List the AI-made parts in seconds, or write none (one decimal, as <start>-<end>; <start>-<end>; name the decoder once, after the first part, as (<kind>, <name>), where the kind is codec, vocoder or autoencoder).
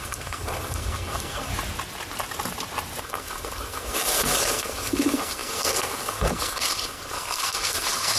0.0-1.5 (codec, SNAC); 3.0-8.2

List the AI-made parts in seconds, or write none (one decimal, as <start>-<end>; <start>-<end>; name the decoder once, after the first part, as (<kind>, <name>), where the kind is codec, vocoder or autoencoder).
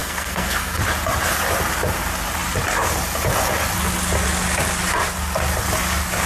0.0-0.8 (codec, SNAC)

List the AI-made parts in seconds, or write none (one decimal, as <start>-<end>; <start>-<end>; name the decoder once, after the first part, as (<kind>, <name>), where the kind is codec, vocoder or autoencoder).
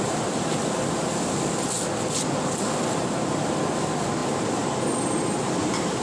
none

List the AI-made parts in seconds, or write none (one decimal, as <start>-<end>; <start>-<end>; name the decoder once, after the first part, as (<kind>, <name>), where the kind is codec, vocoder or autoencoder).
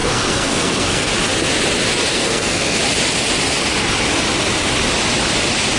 0.0-1.1 (codec, SNAC); 2.1-2.8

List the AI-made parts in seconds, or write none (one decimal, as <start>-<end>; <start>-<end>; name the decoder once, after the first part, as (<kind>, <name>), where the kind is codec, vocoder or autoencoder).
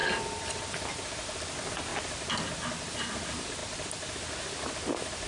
none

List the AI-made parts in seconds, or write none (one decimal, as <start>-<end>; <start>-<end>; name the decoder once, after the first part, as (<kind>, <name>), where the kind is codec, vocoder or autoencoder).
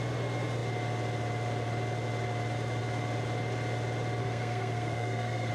4.2-5.5 (codec, SNAC)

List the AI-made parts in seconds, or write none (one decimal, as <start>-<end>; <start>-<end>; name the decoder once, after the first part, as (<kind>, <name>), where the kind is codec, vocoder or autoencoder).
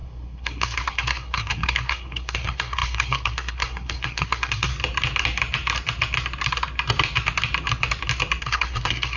0.0-4.7 (codec, SNAC); 8.4-9.2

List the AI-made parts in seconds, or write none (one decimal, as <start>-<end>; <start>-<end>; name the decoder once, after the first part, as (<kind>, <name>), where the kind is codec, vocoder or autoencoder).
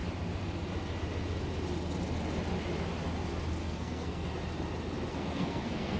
3.6-4.3 (codec, SNAC); 5.1-6.0